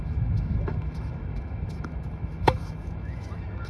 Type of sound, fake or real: fake